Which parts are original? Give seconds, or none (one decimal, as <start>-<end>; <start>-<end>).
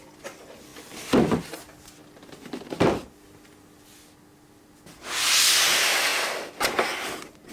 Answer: 0.0-7.5